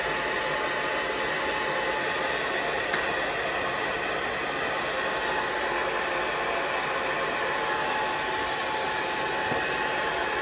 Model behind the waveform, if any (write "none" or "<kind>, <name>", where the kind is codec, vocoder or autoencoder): none